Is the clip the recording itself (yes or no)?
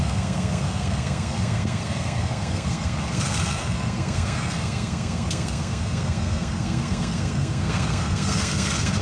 no